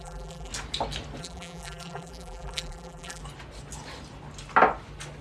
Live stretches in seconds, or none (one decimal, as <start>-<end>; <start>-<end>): 0.5-1.2; 3.2-5.2

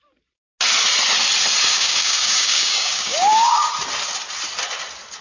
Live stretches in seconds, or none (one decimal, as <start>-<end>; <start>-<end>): 0.0-1.7; 3.7-5.2